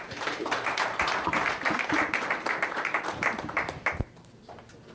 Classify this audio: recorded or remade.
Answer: remade